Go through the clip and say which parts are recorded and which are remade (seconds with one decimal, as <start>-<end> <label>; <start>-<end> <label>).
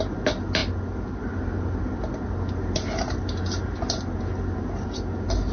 0.0-5.5 recorded